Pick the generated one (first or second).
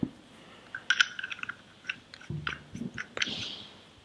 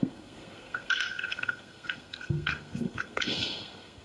second